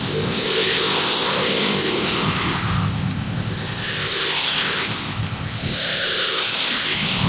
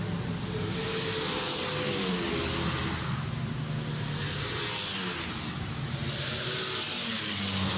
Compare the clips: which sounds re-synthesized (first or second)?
first